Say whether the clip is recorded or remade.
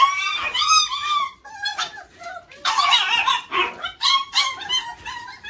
remade